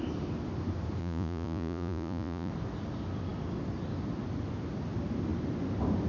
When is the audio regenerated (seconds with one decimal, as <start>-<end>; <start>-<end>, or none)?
1.0-2.5